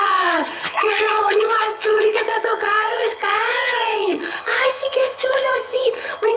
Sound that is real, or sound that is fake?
fake